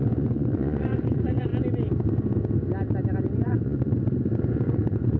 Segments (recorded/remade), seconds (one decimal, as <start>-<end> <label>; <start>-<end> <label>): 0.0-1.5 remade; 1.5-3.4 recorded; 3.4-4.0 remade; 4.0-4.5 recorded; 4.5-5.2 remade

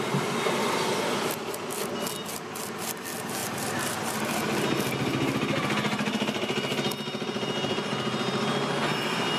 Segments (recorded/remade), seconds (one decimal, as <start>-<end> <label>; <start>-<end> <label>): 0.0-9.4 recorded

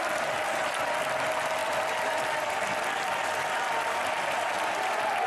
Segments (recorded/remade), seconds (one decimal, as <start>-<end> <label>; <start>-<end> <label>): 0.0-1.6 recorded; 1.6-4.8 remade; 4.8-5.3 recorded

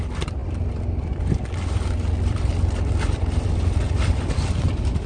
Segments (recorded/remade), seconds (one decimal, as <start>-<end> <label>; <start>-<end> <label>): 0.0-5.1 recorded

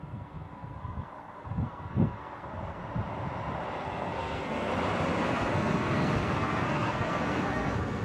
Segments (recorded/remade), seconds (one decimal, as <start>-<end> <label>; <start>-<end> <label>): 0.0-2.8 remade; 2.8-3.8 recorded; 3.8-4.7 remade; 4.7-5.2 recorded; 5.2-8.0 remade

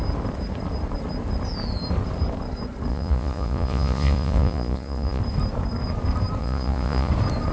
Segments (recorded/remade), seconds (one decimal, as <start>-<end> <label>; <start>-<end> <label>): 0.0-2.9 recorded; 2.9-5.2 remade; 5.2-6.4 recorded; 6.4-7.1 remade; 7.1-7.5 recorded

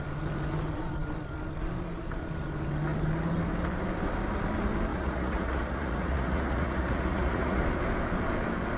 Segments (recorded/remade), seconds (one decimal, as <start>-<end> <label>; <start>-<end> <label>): 0.0-4.9 recorded; 4.9-7.6 remade; 7.6-8.8 recorded